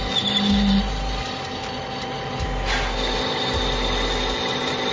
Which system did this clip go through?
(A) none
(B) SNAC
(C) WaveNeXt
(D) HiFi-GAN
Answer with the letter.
A